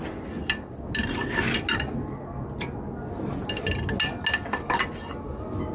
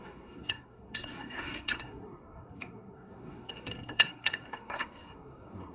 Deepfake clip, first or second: second